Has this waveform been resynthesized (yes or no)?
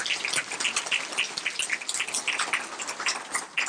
no